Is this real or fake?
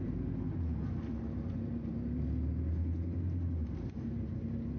real